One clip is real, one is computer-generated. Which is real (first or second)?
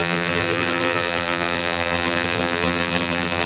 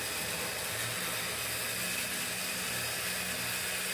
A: second